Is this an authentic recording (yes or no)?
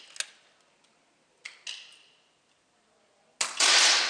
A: yes